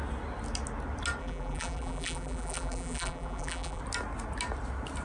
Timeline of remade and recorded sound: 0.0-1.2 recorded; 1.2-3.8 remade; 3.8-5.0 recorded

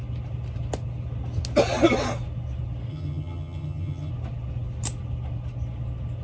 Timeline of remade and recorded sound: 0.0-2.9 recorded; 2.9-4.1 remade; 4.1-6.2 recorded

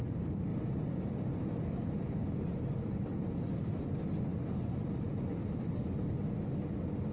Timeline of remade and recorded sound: 0.0-7.1 remade